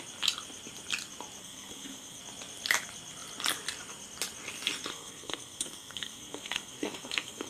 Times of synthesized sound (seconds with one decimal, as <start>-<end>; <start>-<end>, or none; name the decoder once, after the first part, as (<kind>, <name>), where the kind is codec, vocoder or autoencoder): 1.4-2.2 (codec, SNAC); 4.9-7.5